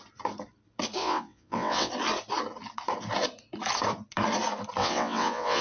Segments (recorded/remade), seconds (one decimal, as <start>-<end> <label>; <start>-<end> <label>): 0.0-1.0 recorded; 1.0-1.9 remade; 1.9-4.8 recorded; 4.8-5.6 remade